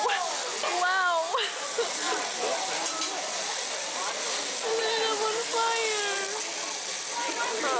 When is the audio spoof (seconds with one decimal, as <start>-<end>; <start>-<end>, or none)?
none